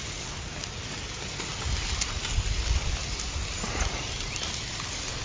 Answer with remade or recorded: recorded